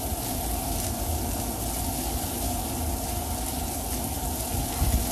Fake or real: real